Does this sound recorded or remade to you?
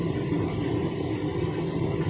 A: recorded